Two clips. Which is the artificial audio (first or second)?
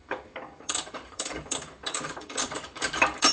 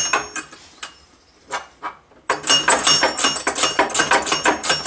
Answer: first